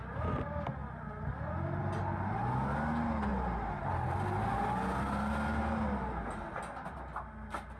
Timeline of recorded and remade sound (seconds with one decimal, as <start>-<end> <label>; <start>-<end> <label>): 0.0-7.8 recorded